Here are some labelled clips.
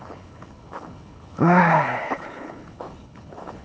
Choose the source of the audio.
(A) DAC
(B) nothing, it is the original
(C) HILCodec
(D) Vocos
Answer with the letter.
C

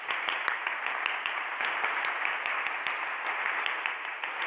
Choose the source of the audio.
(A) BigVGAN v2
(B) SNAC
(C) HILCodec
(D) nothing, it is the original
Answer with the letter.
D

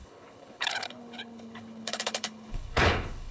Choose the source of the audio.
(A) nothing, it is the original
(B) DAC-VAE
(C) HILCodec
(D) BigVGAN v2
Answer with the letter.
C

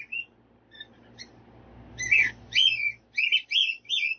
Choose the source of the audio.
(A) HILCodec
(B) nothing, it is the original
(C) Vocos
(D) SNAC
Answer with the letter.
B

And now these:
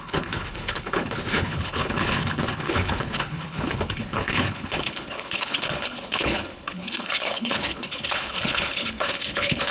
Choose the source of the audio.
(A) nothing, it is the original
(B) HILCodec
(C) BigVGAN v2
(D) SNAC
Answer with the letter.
B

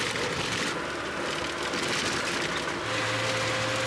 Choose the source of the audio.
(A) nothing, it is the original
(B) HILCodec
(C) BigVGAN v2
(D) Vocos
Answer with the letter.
A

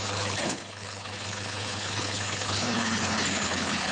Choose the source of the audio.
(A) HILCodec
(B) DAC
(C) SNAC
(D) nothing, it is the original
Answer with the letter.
A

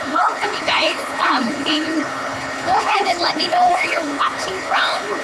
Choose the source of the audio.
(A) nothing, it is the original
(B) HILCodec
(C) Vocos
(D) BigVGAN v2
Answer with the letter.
B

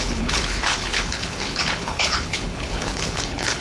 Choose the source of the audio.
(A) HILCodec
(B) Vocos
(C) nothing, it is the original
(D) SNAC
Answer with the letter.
A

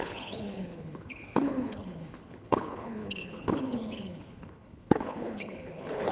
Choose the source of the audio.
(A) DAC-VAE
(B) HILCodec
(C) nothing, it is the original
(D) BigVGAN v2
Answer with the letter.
B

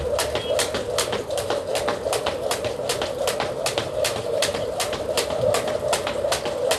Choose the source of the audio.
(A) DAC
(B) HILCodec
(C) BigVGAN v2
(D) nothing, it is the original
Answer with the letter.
D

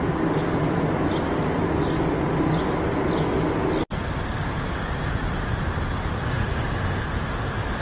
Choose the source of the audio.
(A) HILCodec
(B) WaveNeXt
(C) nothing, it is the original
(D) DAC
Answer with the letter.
C